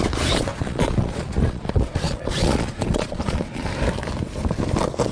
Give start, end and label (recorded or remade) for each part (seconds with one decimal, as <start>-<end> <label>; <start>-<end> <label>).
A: 0.0-0.5 recorded; 0.5-3.6 remade; 3.6-5.1 recorded

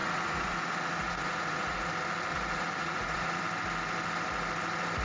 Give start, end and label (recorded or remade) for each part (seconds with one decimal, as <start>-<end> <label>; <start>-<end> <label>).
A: 0.0-1.9 remade; 1.9-2.3 recorded; 2.3-3.4 remade; 3.4-5.0 recorded

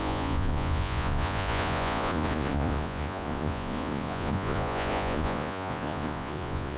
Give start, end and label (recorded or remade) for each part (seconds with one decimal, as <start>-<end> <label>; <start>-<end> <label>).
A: 0.0-6.8 remade

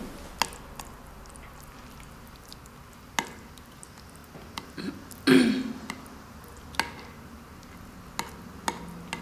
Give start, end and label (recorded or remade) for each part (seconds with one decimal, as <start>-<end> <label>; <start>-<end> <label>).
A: 0.0-9.2 recorded

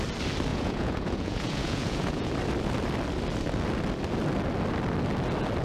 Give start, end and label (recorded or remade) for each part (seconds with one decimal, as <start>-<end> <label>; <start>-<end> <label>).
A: 0.0-0.5 recorded; 0.5-2.3 remade; 2.3-5.6 recorded

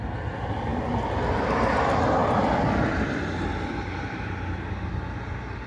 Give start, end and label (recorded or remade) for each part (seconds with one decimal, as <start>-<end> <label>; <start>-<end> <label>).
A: 0.0-5.7 recorded